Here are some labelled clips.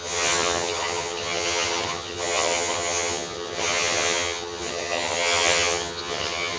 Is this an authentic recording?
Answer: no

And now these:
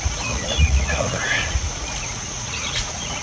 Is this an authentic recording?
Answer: no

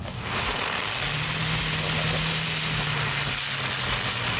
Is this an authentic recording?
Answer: yes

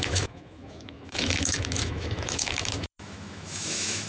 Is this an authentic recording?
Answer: no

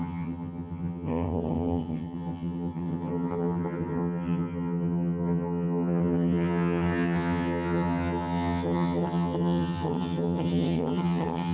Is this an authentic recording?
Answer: no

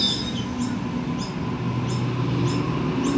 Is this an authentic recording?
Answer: yes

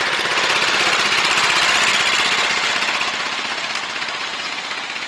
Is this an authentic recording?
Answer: yes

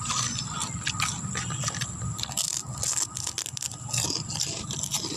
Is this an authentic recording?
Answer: yes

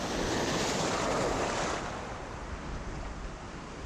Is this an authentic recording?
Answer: yes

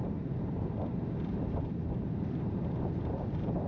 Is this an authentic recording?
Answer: no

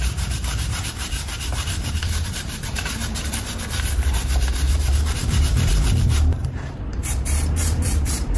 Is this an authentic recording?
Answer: no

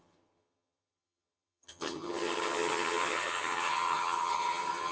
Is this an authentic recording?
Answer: no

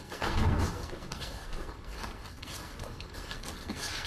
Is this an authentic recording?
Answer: no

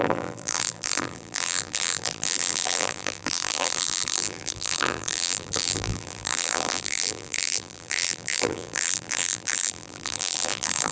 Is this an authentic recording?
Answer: no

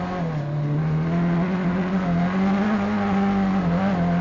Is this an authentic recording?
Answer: yes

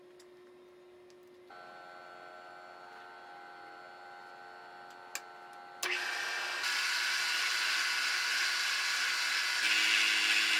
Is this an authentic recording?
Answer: yes